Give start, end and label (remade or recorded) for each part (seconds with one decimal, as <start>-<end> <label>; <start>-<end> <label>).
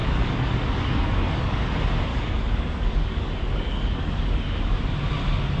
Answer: 0.0-1.7 remade; 1.7-2.1 recorded; 2.1-4.8 remade; 4.8-5.6 recorded